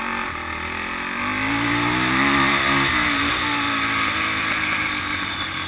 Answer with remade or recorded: recorded